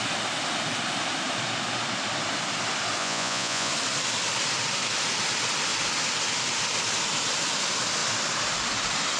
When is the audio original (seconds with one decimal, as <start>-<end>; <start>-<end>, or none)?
0.0-3.0; 3.7-9.2